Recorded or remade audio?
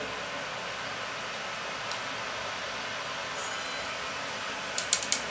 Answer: recorded